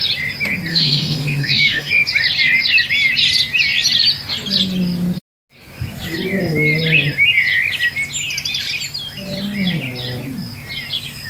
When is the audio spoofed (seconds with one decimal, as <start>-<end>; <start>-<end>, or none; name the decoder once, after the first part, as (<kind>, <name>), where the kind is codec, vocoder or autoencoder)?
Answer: 0.7-1.9 (autoencoder, DAC-VAE)